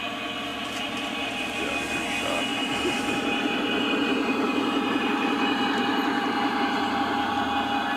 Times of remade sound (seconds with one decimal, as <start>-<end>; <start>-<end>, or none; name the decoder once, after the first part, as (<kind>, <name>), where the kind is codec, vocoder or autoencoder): 0.5-1.6 (vocoder, BigVGAN v2); 2.5-7.3